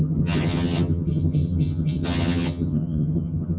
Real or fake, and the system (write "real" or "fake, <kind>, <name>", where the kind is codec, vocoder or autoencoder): fake, vocoder, HiFi-GAN